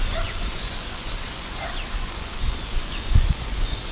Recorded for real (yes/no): no